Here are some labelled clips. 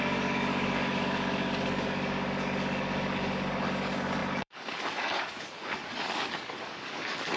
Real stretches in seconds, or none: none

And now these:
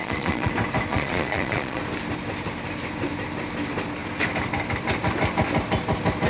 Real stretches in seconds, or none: 0.5-0.9; 1.8-6.3

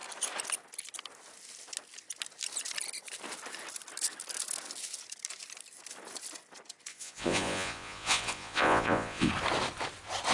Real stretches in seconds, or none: 0.0-6.9; 9.3-10.3

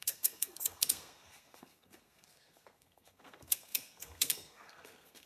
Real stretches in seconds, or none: none

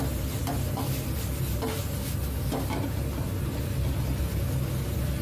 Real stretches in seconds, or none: 0.0-5.2